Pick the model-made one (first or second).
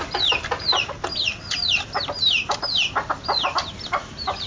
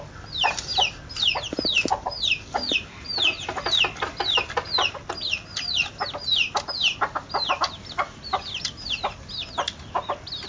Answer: first